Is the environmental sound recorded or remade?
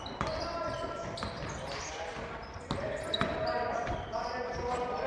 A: recorded